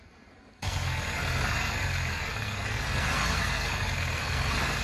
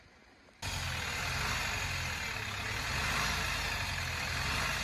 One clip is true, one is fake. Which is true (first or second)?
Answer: second